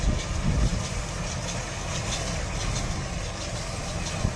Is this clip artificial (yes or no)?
no